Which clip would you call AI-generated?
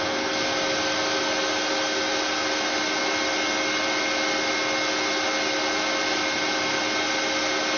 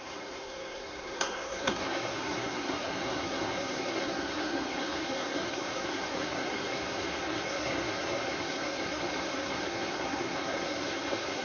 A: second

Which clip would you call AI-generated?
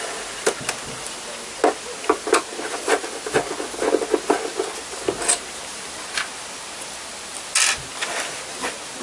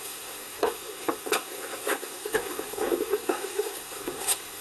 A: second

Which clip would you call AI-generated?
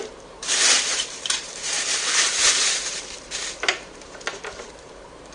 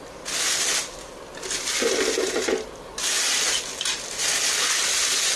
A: first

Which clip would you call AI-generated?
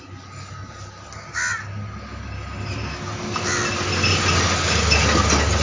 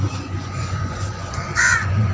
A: second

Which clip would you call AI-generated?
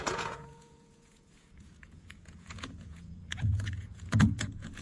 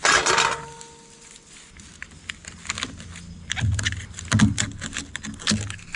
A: first